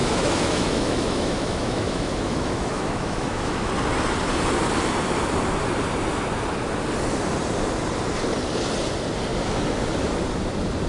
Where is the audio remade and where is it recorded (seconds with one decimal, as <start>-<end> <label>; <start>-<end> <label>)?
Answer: 0.0-3.7 remade; 3.7-10.9 recorded